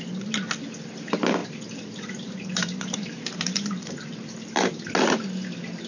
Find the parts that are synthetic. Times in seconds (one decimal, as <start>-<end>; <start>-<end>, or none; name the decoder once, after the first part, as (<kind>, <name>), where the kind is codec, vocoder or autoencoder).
1.4-4.9 (vocoder, BigVGAN v2)